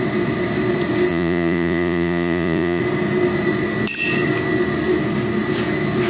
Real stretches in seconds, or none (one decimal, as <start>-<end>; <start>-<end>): 0.0-1.1; 2.8-6.1